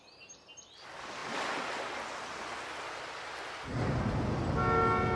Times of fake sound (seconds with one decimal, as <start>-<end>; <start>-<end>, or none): none